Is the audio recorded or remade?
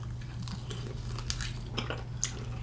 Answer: recorded